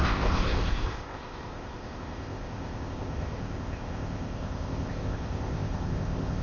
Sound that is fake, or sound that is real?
fake